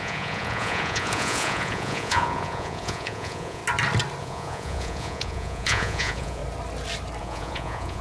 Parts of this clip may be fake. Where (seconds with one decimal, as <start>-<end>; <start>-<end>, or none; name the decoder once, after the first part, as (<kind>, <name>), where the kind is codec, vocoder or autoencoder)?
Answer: 0.0-3.6 (vocoder, Vocos); 4.2-6.4; 7.2-8.0